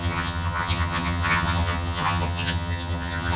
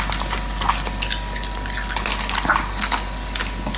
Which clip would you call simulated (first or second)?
first